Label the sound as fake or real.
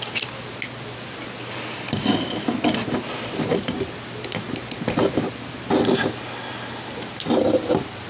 real